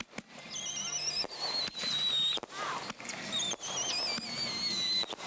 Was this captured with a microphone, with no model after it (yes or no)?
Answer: yes